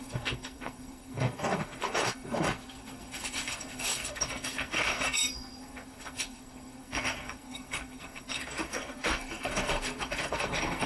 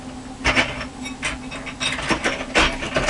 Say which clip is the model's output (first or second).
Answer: first